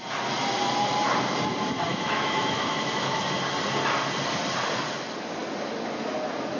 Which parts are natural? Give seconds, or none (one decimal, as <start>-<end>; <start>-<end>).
0.0-1.9; 3.2-6.6